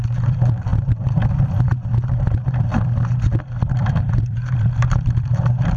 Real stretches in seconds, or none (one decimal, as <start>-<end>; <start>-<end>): 2.7-3.4